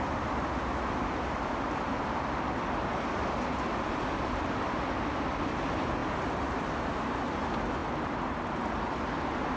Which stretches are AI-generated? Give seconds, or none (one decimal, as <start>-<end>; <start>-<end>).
1.1-5.4